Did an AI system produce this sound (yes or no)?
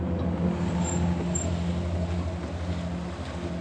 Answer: no